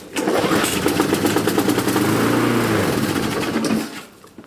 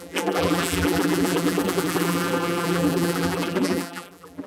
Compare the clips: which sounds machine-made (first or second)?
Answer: second